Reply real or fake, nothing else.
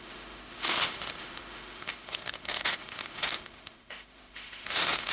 fake